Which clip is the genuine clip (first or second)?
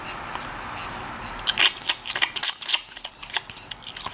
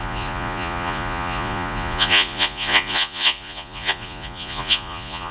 first